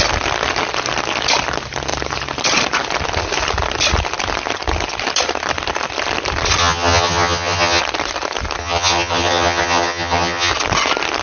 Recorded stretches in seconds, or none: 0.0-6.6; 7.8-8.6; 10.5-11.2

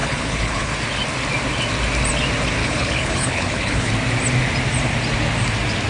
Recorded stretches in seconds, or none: 0.7-2.6; 3.9-5.9

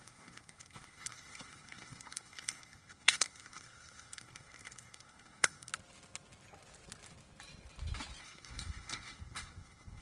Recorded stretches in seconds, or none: 5.7-8.2

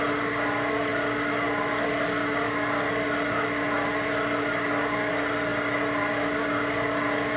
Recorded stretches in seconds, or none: 0.0-7.4